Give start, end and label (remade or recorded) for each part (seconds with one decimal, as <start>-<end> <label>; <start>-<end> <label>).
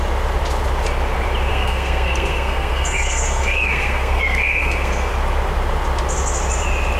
0.0-1.5 recorded; 1.5-5.1 remade; 5.1-7.0 recorded